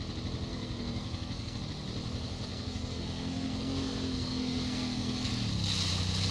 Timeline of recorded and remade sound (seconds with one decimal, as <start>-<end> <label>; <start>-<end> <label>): 0.0-0.5 recorded; 0.5-1.6 remade; 1.6-2.5 recorded; 2.5-5.3 remade; 5.3-6.3 recorded